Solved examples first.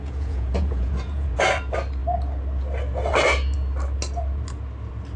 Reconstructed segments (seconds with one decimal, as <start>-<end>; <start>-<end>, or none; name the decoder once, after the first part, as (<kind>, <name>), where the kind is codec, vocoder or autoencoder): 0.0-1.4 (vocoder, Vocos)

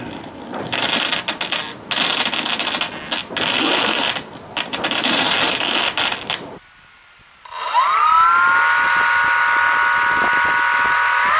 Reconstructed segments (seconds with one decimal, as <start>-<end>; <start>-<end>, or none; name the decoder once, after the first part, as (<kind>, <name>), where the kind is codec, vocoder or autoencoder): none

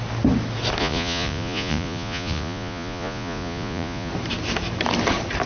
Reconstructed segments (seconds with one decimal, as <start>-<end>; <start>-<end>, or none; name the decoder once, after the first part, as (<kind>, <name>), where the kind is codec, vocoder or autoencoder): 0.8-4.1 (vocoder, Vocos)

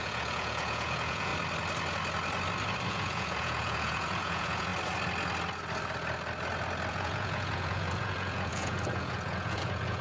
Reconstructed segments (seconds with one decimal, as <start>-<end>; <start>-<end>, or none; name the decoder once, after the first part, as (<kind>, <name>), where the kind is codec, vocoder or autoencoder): 0.0-1.3 (vocoder, Vocos); 2.9-4.7; 6.9-10.0

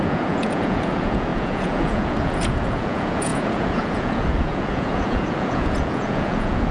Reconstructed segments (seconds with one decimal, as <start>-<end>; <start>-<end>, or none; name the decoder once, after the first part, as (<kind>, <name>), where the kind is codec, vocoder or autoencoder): 0.0-6.7 (vocoder, Vocos)

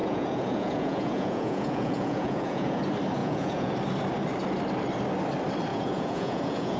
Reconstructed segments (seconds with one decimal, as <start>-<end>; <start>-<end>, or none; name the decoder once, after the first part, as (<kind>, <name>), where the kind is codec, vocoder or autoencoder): 0.0-2.8 (vocoder, Vocos); 3.2-3.7; 5.7-6.8